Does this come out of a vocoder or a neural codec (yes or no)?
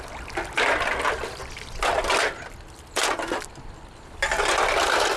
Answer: no